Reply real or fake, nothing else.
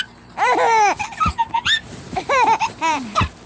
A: real